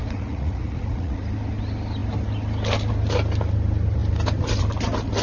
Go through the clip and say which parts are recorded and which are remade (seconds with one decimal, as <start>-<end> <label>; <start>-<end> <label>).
0.0-1.2 remade; 1.2-5.2 recorded

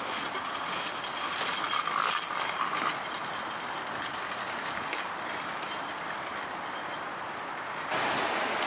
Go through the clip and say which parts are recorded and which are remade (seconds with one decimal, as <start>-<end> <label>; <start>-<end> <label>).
0.0-8.7 recorded

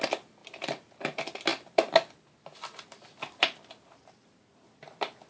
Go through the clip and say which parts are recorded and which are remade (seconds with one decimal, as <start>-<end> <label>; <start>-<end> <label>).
0.0-5.3 recorded

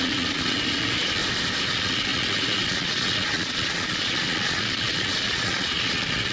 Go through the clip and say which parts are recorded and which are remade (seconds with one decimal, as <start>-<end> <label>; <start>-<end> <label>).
0.0-1.2 remade; 1.2-1.7 recorded; 1.7-6.3 remade

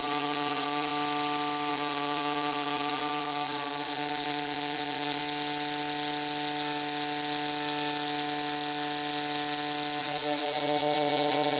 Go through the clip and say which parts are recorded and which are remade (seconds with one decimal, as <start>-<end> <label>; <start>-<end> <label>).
0.0-0.9 remade; 0.9-1.7 recorded; 1.7-5.2 remade; 5.2-10.0 recorded; 10.0-11.6 remade

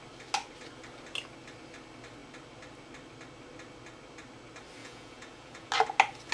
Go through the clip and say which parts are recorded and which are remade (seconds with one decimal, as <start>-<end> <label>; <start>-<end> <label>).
0.0-4.8 recorded; 4.8-5.7 remade; 5.7-6.3 recorded

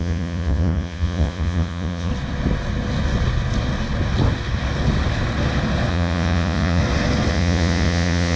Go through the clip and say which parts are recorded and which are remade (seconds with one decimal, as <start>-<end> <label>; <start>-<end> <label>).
0.0-2.1 remade; 2.1-5.9 recorded; 5.9-6.8 remade; 6.8-7.3 recorded; 7.3-8.4 remade